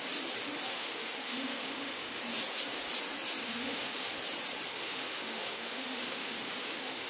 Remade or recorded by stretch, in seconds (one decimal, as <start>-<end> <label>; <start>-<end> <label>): 0.0-0.7 recorded; 0.7-2.2 remade; 2.2-3.4 recorded; 3.4-4.1 remade; 4.1-4.7 recorded; 4.7-7.1 remade